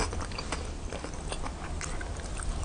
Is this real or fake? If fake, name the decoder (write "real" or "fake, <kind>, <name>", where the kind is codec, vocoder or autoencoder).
real